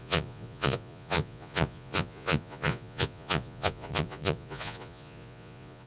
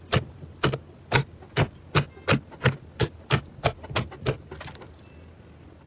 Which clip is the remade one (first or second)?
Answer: first